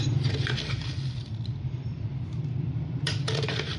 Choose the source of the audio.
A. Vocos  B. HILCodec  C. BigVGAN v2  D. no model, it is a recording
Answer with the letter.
C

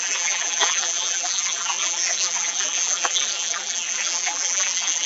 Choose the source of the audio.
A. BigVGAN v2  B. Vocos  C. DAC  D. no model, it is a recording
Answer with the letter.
A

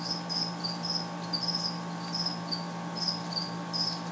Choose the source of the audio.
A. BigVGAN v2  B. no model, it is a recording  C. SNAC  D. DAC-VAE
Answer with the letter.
B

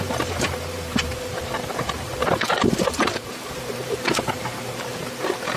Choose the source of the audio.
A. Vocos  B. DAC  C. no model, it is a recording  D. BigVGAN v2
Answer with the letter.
D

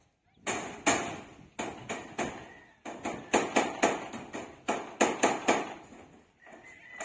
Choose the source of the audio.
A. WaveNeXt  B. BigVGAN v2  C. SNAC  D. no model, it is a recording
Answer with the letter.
D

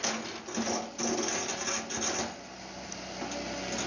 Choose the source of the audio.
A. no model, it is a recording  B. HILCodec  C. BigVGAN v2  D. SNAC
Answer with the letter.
A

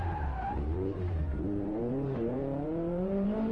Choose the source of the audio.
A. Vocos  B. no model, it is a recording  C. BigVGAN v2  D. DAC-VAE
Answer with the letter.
C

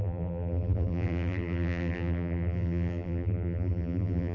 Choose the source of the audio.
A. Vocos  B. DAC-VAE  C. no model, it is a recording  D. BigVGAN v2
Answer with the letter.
D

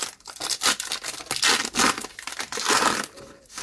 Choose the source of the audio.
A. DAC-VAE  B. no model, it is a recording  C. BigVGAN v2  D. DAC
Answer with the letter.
C